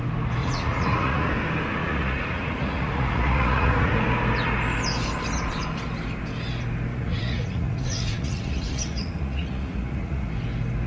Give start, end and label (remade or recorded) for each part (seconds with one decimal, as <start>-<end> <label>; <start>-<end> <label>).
0.0-0.4 recorded; 0.4-1.3 remade; 1.3-1.8 recorded; 1.8-4.0 remade; 4.0-6.9 recorded; 6.9-10.3 remade; 10.3-10.9 recorded